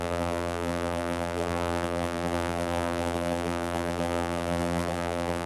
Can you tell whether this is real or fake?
fake